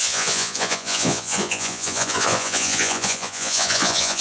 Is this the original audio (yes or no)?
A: no